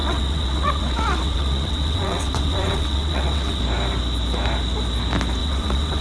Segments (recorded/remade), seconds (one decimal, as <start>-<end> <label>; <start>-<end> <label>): 0.0-3.6 remade; 3.6-5.4 recorded; 5.4-6.0 remade